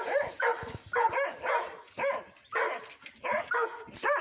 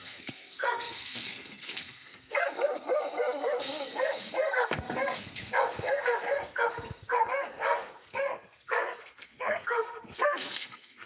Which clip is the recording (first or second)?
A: first